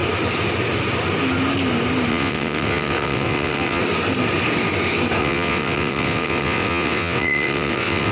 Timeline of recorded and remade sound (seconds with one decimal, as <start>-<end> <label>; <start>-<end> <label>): 0.0-2.1 recorded; 2.1-3.8 remade; 3.8-5.2 recorded; 5.2-8.1 remade